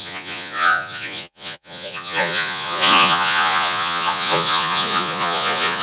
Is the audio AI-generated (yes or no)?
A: yes